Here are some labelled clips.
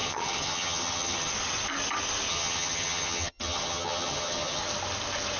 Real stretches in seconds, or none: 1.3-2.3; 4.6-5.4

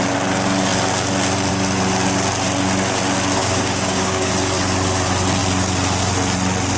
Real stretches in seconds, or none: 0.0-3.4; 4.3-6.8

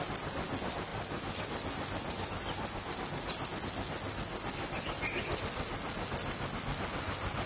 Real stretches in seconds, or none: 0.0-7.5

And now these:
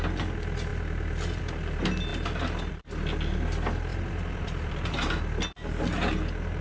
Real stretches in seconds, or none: 0.0-3.9; 5.2-6.6

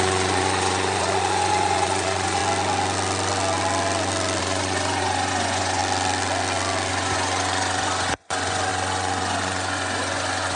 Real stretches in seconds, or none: 2.4-4.4; 5.8-6.9